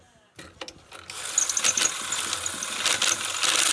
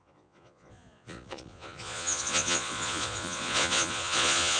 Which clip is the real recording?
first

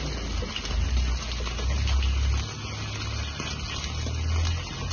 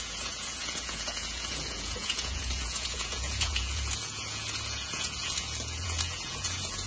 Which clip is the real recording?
first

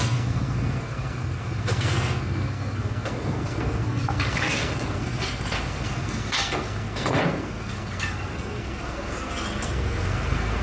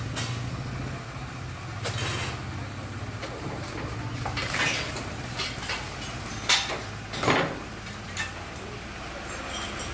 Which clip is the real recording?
second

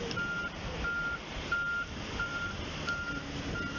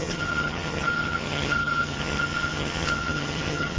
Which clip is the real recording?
first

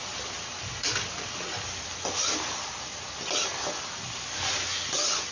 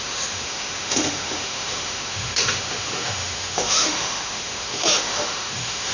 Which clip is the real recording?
first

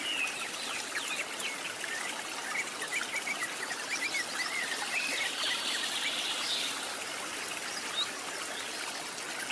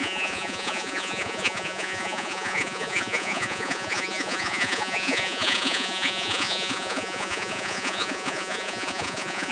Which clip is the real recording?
first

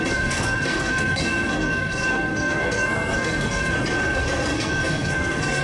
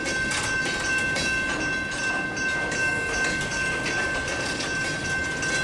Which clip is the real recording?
second